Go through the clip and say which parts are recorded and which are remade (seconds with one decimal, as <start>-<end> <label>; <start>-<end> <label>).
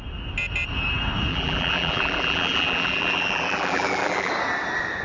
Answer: 0.0-1.3 recorded; 1.3-4.3 remade; 4.3-5.0 recorded